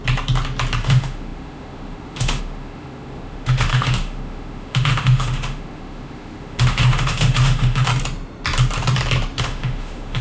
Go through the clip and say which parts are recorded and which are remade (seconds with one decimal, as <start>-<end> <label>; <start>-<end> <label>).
0.0-0.8 recorded; 0.8-7.9 remade; 7.9-9.4 recorded; 9.4-10.2 remade